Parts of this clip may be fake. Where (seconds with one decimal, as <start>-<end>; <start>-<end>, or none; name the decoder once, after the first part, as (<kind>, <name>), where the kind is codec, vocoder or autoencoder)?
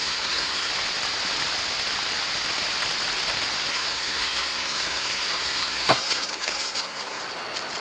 0.0-0.7 (codec, SNAC); 3.7-7.2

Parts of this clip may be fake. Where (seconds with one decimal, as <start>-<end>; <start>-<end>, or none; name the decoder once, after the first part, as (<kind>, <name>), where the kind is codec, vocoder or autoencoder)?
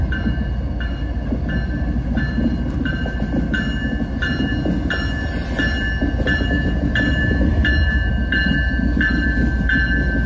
none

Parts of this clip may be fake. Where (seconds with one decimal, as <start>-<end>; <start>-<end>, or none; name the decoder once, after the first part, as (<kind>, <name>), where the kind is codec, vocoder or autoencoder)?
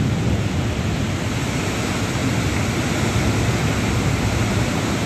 0.0-2.2 (vocoder, BigVGAN v2); 4.4-5.1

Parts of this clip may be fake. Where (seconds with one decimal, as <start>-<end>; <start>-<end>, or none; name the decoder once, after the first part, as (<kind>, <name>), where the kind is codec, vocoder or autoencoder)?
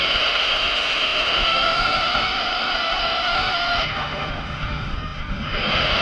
0.0-6.0 (autoencoder, DAC-VAE)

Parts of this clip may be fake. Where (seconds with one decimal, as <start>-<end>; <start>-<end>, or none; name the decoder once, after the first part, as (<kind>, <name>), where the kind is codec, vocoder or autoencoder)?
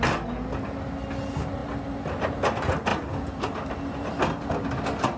none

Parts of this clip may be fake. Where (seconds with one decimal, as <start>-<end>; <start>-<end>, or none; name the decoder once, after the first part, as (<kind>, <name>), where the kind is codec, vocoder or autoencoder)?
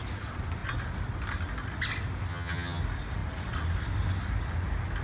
2.3-2.8 (vocoder, HiFi-GAN)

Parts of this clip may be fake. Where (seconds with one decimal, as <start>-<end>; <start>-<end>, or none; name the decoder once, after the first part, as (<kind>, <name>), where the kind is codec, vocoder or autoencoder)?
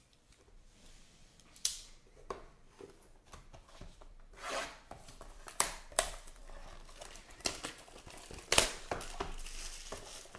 0.0-6.4 (vocoder, BigVGAN v2)